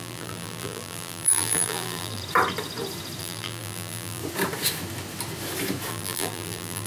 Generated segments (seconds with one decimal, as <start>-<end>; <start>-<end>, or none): 0.0-2.2; 3.2-4.2; 5.9-6.9